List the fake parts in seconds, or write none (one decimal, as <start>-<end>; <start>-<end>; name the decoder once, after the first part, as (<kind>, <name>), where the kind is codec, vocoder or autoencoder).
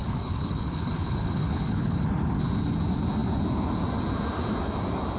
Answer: 0.0-2.0 (codec, HILCodec)